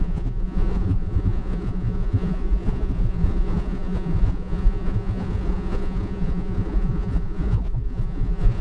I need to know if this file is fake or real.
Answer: fake